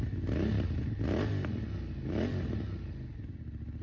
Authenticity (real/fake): real